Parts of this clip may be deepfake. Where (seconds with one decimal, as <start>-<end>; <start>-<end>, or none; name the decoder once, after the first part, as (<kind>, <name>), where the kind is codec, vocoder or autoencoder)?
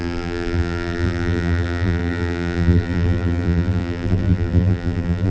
0.0-5.3 (vocoder, BigVGAN v2)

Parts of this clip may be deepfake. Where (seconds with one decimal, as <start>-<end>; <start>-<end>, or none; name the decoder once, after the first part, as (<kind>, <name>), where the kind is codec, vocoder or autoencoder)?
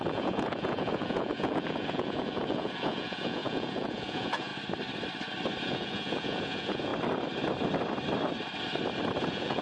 0.0-4.5 (vocoder, Vocos); 5.6-6.9; 9.2-9.6